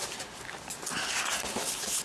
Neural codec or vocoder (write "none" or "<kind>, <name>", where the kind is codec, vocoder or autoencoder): none